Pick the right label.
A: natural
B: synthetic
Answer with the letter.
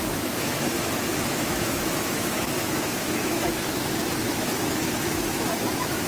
B